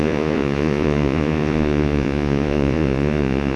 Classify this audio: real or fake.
fake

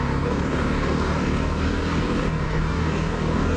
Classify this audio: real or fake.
fake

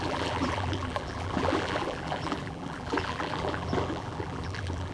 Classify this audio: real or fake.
fake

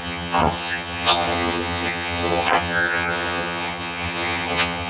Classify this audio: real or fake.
fake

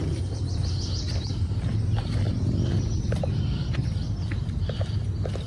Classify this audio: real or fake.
real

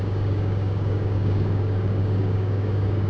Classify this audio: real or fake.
fake